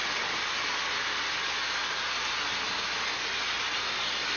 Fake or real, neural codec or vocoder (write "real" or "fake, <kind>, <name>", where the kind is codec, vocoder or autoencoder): real